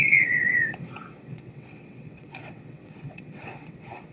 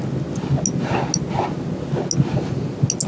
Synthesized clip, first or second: first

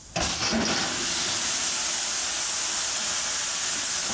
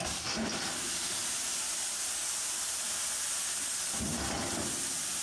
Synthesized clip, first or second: second